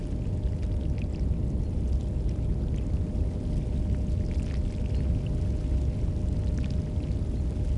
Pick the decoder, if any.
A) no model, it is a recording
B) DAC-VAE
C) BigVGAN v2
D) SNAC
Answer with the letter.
A